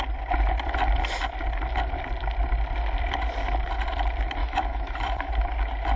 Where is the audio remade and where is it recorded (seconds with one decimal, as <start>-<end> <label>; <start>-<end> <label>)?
0.0-4.4 recorded; 4.4-5.3 remade; 5.3-6.0 recorded